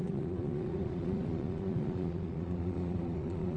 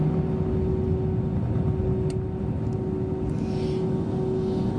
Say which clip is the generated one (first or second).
first